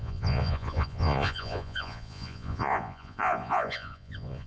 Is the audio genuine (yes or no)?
no